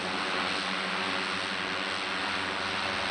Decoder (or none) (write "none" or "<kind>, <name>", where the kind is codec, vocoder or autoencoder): none